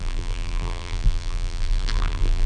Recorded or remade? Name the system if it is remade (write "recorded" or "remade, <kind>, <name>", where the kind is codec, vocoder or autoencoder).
remade, vocoder, BigVGAN v2